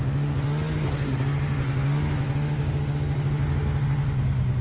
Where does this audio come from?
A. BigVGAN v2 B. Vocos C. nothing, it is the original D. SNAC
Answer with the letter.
C